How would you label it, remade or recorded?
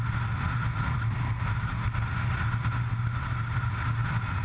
recorded